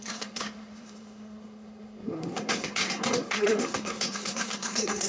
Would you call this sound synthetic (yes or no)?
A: yes